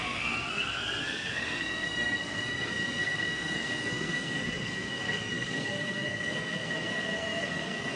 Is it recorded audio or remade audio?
remade